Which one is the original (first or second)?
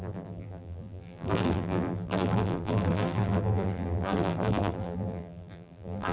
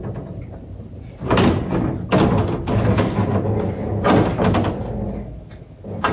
second